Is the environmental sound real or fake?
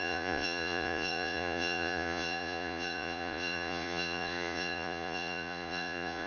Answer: fake